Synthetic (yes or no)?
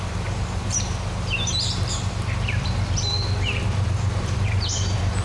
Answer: yes